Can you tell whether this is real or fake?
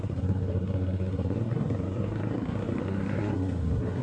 fake